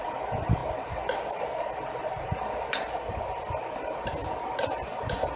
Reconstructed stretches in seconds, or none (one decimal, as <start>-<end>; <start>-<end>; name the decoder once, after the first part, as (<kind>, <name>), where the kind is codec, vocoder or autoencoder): none

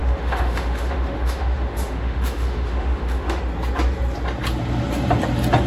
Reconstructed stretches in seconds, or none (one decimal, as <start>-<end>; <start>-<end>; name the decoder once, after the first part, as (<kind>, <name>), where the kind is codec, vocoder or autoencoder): 0.0-3.4 (autoencoder, DAC-VAE)

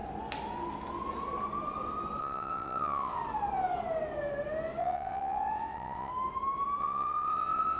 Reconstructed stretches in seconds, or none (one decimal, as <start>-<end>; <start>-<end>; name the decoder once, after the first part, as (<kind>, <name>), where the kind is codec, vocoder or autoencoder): 2.2-3.2 (vocoder, WaveNeXt); 4.8-6.1; 6.8-7.8

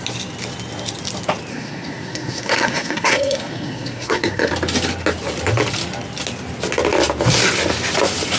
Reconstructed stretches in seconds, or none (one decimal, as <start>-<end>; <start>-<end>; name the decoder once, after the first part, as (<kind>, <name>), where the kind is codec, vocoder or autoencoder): 1.5-4.5 (codec, SNAC)

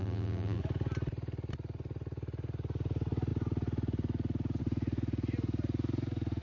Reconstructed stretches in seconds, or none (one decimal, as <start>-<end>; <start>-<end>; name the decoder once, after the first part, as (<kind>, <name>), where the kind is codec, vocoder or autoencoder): 0.0-0.6 (vocoder, BigVGAN v2)